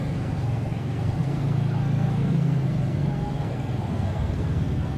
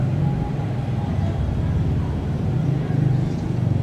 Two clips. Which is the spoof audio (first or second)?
first